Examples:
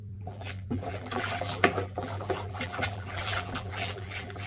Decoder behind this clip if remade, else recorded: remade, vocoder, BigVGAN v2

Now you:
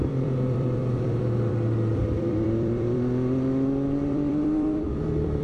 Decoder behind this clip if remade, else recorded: remade, vocoder, BigVGAN v2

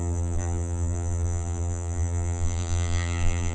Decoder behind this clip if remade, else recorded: remade, vocoder, BigVGAN v2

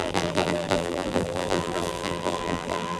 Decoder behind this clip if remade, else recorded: remade, vocoder, BigVGAN v2